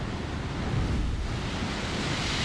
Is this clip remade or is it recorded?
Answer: recorded